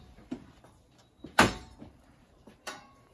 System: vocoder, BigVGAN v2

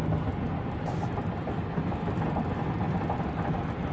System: none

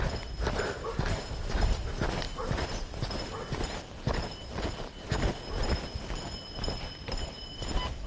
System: none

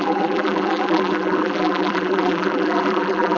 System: vocoder, BigVGAN v2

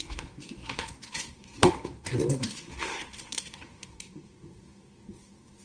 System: codec, SNAC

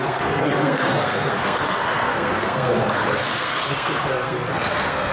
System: codec, SNAC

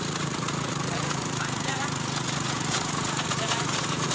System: vocoder, Vocos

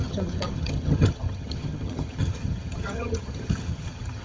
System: vocoder, HiFi-GAN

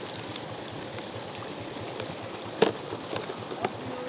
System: none